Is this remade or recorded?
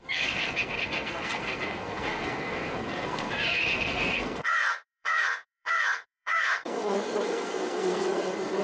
remade